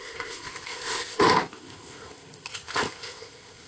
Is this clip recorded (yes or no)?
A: no